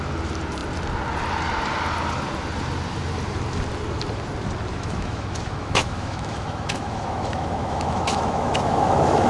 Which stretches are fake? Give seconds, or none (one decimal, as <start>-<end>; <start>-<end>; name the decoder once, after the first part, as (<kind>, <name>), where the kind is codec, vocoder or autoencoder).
4.7-9.3 (autoencoder, DAC-VAE)